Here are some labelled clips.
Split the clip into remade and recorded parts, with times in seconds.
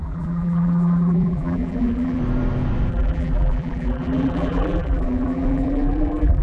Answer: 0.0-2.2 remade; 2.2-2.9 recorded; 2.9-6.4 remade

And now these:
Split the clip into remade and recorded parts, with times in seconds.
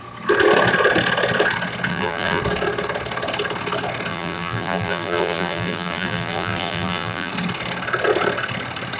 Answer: 0.0-1.9 recorded; 1.9-2.4 remade; 2.4-4.1 recorded; 4.1-7.3 remade; 7.3-9.0 recorded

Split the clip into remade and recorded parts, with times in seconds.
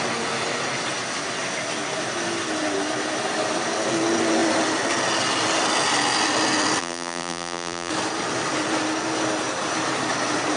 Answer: 0.0-6.8 recorded; 6.8-7.9 remade; 7.9-10.6 recorded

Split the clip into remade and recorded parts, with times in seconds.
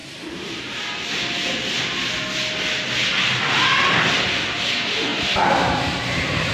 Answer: 0.0-0.8 remade; 0.8-5.1 recorded; 5.1-6.5 remade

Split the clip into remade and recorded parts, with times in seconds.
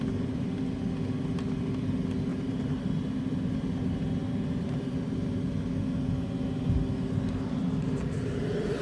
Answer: 0.0-2.3 recorded; 2.3-2.9 remade; 2.9-4.2 recorded; 4.2-4.9 remade; 4.9-8.8 recorded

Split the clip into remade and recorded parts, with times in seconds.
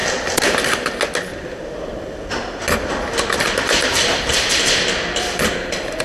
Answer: 0.0-3.6 recorded; 3.6-6.0 remade